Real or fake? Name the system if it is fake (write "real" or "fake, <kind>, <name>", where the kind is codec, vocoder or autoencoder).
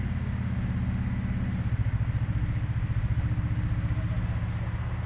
real